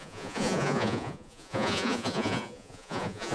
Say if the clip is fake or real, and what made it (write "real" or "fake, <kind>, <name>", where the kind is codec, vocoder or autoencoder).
fake, vocoder, Vocos